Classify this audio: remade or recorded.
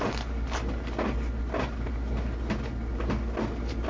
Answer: recorded